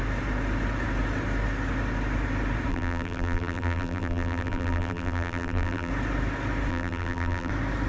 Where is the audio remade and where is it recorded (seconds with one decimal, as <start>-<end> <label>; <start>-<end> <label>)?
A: 0.0-2.7 recorded; 2.7-5.9 remade; 5.9-6.7 recorded; 6.7-7.5 remade; 7.5-7.9 recorded